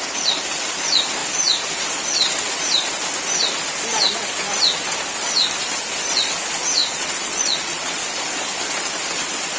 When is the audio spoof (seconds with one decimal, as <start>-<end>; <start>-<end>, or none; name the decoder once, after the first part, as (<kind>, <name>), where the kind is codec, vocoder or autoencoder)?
6.8-8.0 (vocoder, Vocos)